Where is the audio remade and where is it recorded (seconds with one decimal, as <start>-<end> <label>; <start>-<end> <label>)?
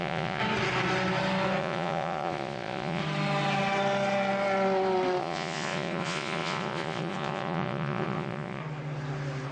0.0-0.4 remade; 0.4-1.6 recorded; 1.6-3.0 remade; 3.0-5.2 recorded; 5.2-8.6 remade; 8.6-9.5 recorded